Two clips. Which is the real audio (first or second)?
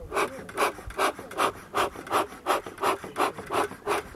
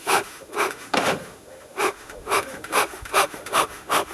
first